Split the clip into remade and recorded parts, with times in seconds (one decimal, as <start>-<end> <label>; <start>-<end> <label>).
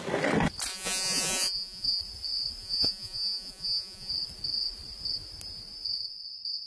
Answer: 0.0-0.7 recorded; 0.7-2.0 remade; 2.0-2.6 recorded; 2.6-4.1 remade; 4.1-6.7 recorded